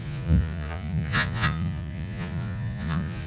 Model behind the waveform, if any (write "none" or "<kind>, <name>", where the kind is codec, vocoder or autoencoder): vocoder, Vocos